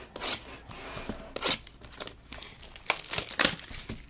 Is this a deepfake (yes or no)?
no